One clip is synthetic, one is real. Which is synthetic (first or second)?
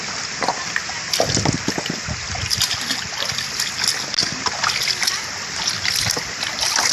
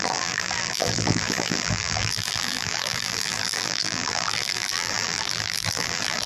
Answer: second